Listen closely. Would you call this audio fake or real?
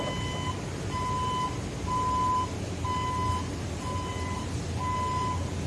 real